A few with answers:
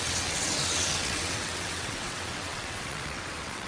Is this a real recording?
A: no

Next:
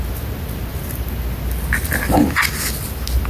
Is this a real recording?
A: yes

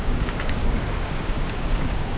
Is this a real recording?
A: no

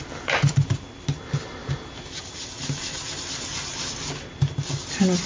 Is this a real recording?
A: yes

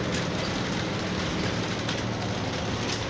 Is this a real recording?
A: yes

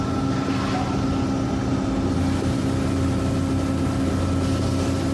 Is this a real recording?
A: yes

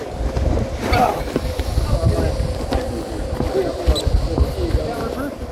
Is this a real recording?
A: yes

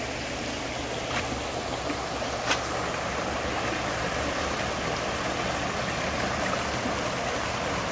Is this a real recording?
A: yes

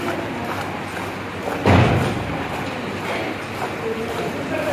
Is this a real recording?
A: yes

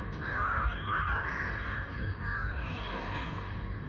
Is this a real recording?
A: no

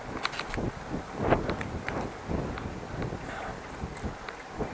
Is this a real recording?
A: yes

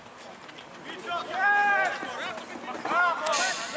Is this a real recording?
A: yes